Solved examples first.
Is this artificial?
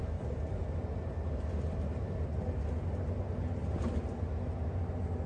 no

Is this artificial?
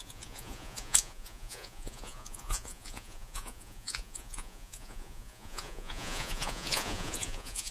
yes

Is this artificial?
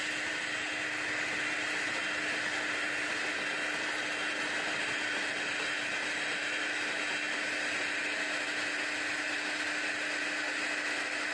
no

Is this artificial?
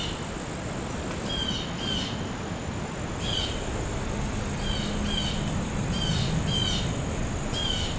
no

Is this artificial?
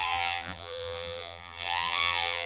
yes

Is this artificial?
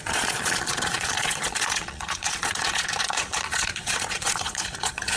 yes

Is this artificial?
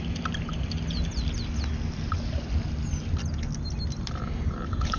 no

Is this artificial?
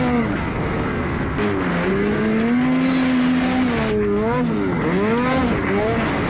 no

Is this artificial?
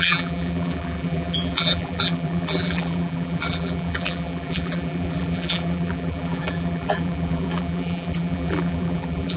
yes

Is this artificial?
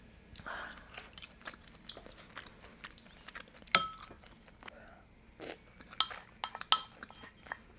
no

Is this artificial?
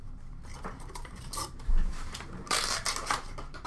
yes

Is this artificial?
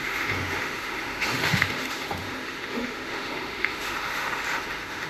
yes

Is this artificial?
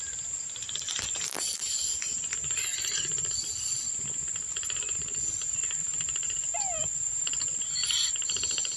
no